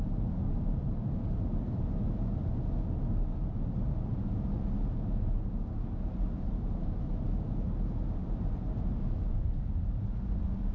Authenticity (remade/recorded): recorded